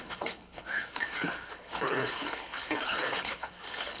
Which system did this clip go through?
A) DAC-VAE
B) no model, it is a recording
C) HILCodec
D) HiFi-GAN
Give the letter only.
C